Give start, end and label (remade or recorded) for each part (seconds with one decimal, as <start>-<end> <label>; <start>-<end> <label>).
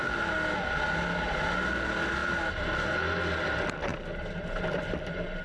0.0-5.4 recorded